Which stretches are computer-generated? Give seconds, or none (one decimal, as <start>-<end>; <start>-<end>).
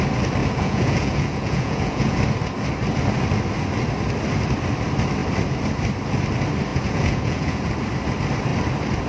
0.4-2.2; 6.7-7.7